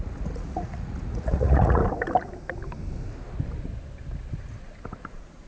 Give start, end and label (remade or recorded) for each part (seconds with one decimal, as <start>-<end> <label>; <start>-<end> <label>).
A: 0.0-1.8 remade; 1.8-5.1 recorded; 5.1-5.5 remade